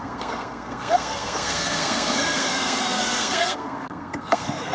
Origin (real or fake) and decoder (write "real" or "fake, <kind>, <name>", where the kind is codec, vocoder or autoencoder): fake, codec, SNAC